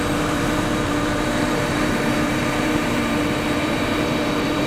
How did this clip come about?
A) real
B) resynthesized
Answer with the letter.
B